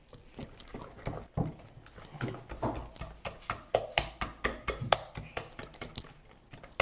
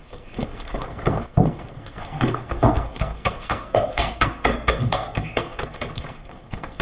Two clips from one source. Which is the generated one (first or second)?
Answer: second